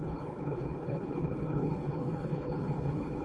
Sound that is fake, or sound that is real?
fake